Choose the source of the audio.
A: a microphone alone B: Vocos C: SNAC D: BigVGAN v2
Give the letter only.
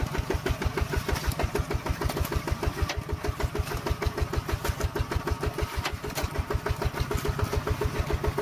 A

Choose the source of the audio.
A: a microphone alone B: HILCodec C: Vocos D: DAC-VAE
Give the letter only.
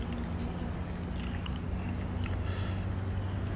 A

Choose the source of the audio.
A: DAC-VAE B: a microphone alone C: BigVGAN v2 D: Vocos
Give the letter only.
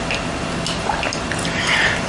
B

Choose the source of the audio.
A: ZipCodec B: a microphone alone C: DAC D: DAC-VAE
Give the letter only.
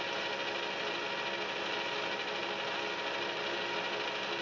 B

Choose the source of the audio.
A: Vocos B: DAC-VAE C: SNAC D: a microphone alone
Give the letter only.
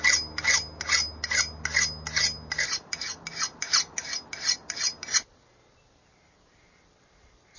D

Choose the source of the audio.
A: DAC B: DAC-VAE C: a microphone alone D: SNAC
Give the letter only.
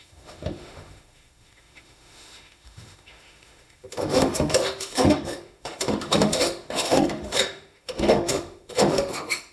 B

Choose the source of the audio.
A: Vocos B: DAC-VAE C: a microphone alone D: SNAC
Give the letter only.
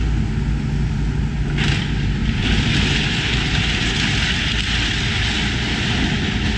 C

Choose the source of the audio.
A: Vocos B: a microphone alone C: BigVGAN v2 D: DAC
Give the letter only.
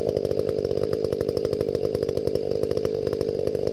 C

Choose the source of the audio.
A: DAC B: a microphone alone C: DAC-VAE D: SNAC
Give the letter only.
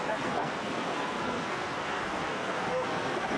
D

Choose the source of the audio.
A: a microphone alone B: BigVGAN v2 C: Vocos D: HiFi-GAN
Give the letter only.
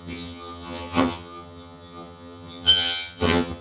D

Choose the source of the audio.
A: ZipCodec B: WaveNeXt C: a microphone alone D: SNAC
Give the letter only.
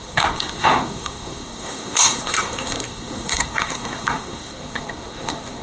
D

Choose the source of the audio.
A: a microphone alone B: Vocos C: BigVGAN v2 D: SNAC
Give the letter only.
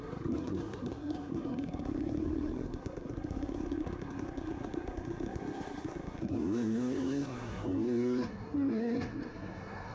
D